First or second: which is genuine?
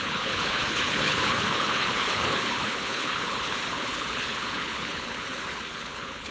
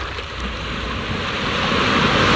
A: second